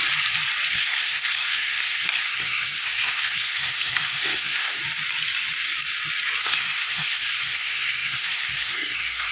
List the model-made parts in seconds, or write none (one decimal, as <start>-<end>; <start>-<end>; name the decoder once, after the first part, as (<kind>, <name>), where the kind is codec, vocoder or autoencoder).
0.7-4.8 (codec, SNAC); 6.4-9.3